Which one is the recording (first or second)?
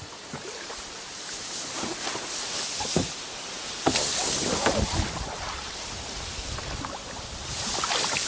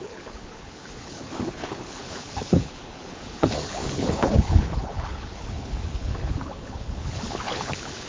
first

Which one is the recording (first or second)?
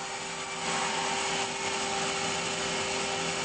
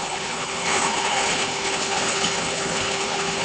first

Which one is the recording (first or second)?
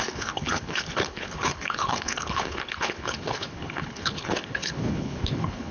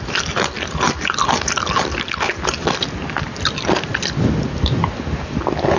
second